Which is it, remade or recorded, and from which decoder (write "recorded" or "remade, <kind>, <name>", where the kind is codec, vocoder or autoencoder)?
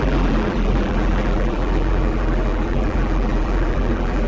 remade, vocoder, BigVGAN v2